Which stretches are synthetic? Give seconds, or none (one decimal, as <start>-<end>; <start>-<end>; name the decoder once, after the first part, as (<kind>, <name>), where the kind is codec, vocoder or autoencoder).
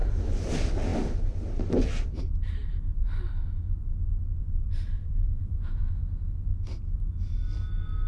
5.4-6.0 (autoencoder, DAC-VAE)